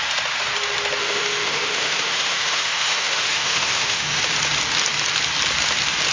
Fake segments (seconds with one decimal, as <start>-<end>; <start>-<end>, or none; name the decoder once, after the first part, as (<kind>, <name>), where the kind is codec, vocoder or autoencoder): 1.0-4.2 (autoencoder, DAC-VAE)